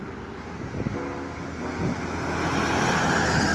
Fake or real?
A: real